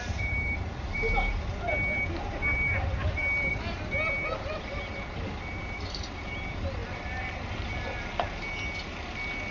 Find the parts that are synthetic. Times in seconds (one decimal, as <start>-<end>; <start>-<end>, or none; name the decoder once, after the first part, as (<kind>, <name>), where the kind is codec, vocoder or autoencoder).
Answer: 0.0-1.3 (vocoder, BigVGAN v2); 2.2-3.5; 4.4-6.8